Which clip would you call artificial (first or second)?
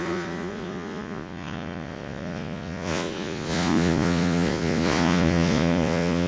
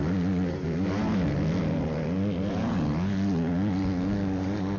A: first